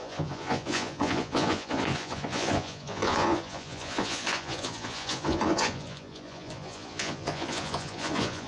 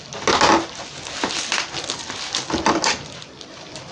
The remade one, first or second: first